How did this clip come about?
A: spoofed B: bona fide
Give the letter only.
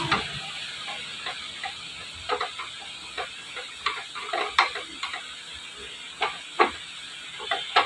B